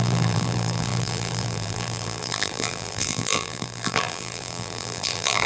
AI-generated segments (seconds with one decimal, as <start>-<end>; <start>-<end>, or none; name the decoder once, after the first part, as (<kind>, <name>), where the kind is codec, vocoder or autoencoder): 0.0-5.5 (vocoder, BigVGAN v2)